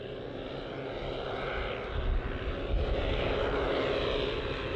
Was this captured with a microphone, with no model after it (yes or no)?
yes